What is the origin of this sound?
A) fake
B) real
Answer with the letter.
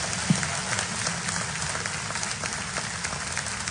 B